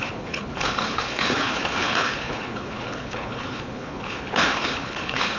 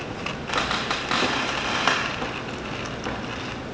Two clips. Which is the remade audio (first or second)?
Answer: first